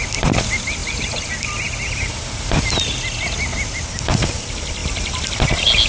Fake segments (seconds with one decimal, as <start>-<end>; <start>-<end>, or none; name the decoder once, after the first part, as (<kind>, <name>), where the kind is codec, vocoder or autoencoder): none